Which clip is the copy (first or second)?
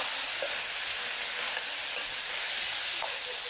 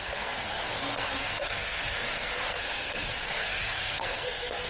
second